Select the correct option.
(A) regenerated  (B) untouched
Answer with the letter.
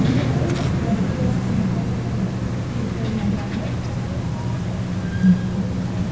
B